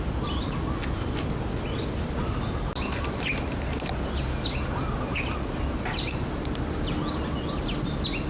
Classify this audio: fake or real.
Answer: real